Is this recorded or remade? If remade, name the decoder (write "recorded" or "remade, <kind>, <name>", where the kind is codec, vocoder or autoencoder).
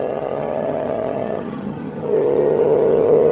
remade, vocoder, HiFi-GAN